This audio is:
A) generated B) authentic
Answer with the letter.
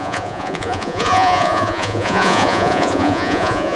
A